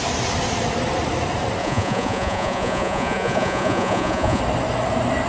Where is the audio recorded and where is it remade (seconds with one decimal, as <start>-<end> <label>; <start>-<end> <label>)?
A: 0.0-1.6 recorded; 1.6-4.4 remade; 4.4-5.3 recorded